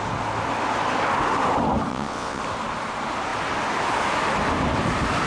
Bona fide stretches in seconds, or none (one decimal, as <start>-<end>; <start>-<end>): 0.0-1.9; 2.4-5.3

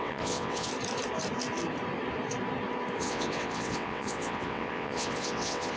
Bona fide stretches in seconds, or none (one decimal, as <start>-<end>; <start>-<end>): 0.7-3.0

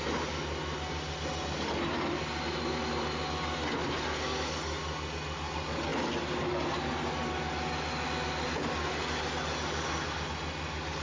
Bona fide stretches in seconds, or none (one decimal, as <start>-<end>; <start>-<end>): 0.0-11.0

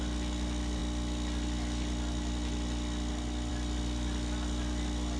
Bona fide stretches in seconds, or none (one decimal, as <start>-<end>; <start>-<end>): 0.0-5.2

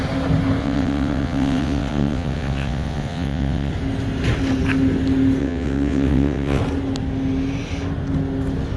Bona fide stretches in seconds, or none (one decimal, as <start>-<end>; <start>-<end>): 0.0-0.6; 3.7-5.4; 6.6-8.8

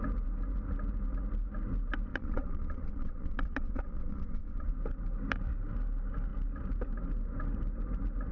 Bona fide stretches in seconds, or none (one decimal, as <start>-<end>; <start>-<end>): 0.0-2.1; 4.7-8.3

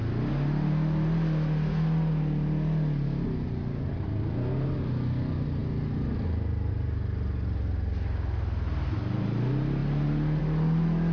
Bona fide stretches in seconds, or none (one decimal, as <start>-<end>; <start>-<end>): 0.0-11.1